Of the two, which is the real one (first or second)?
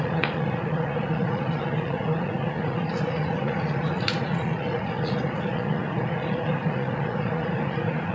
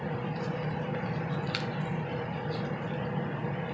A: second